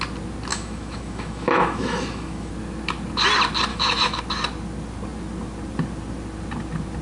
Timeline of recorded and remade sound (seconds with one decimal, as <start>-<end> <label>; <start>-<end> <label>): 0.0-0.5 recorded; 0.5-2.5 remade; 2.5-3.7 recorded; 3.7-4.2 remade; 4.2-7.0 recorded